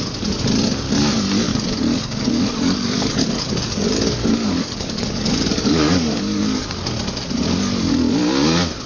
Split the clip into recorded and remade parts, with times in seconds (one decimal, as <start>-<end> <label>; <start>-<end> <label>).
0.0-1.5 recorded; 1.5-6.7 remade; 6.7-8.9 recorded